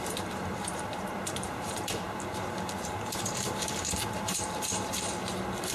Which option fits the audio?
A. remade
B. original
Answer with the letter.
A